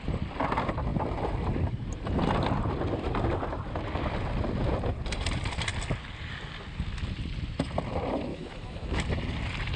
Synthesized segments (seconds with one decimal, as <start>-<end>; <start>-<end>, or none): 8.3-9.0